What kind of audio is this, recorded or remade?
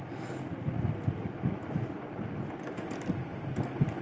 recorded